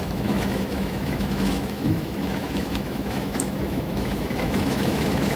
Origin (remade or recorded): remade